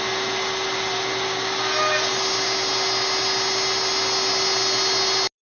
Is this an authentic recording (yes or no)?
yes